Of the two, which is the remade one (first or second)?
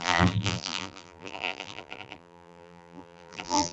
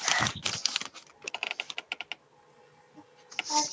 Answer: first